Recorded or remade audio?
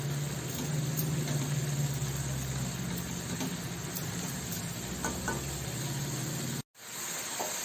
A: recorded